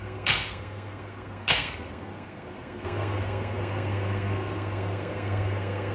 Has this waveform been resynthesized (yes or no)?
yes